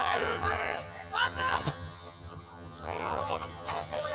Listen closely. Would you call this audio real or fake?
fake